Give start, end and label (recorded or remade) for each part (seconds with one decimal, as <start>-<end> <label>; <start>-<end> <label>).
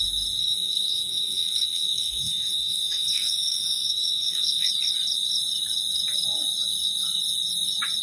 0.0-0.4 recorded; 0.4-4.7 remade; 4.7-8.0 recorded